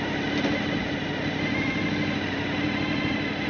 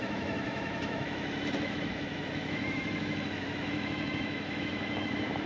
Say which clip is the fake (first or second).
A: second